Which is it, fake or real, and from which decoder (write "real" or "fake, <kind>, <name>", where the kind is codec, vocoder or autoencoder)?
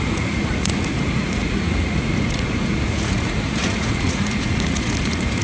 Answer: fake, vocoder, Vocos